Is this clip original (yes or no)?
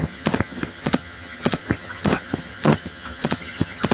no